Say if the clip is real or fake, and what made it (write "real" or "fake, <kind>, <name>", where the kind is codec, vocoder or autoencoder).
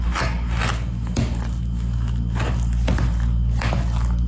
real